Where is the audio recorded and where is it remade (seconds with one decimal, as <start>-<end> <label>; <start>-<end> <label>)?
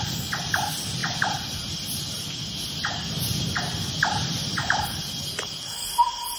0.0-6.4 recorded